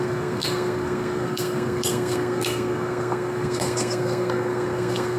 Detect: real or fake fake